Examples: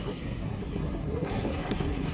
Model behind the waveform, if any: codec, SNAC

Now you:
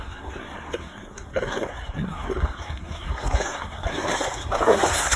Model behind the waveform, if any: codec, SNAC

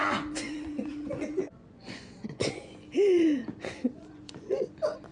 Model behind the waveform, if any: vocoder, Vocos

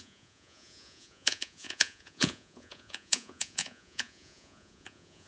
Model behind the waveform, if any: vocoder, Vocos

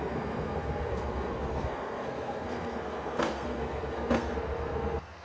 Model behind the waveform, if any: codec, SNAC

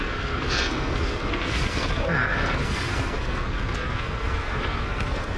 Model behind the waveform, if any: codec, SNAC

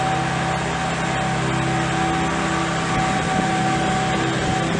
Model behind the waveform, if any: none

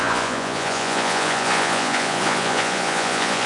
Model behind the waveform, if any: vocoder, Vocos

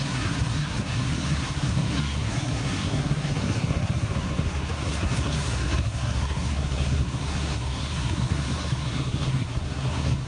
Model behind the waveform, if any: codec, SNAC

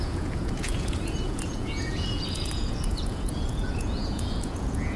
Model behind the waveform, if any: vocoder, Vocos